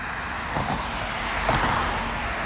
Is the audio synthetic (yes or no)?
no